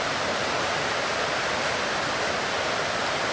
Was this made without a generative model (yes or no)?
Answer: yes